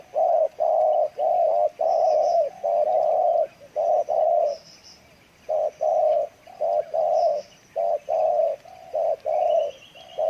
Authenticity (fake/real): real